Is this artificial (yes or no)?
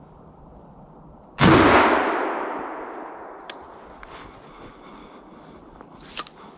no